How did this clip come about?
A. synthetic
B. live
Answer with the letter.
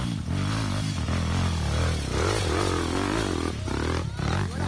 B